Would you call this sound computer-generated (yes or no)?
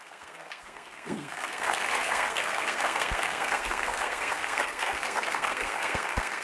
yes